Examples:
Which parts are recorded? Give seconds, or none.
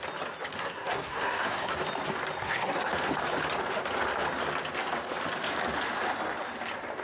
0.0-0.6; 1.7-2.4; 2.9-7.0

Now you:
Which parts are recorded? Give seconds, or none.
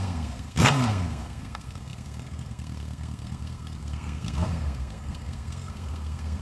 none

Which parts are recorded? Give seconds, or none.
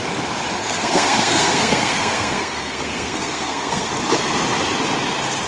0.0-0.6; 3.9-5.5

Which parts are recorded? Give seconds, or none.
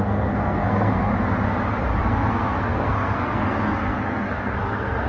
1.1-2.0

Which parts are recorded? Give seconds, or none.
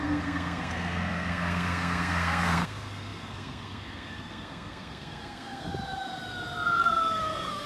5.7-6.8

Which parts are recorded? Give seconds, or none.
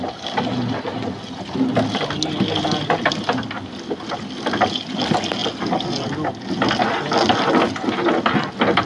0.0-8.9